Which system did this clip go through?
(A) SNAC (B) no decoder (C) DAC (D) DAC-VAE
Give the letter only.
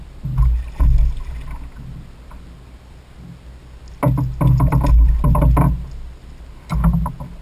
B